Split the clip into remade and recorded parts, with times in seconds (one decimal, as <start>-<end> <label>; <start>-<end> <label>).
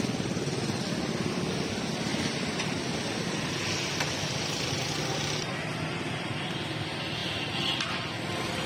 0.0-2.1 recorded; 2.1-3.7 remade; 3.7-8.7 recorded